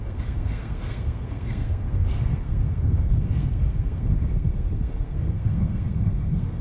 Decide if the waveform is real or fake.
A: fake